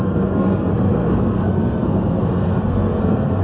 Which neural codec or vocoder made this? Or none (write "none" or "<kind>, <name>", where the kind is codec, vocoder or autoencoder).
codec, SNAC